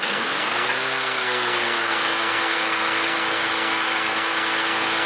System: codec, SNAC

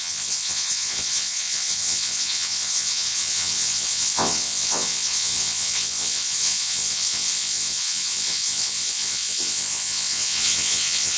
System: vocoder, WaveNeXt